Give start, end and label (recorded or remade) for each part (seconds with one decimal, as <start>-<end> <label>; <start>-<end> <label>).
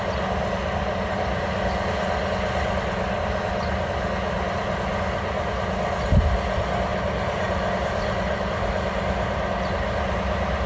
0.0-10.7 recorded